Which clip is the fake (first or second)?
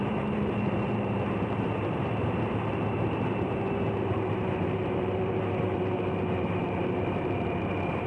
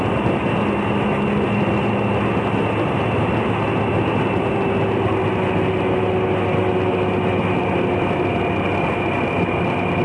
first